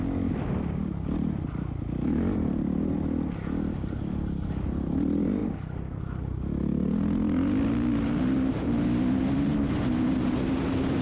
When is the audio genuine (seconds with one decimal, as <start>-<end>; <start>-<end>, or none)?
0.0-11.0